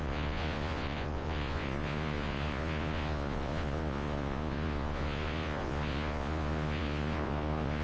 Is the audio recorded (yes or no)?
no